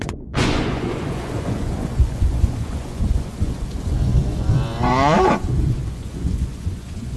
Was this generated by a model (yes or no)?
yes